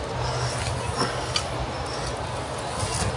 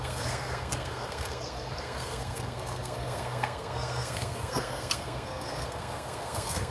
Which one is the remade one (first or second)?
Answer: second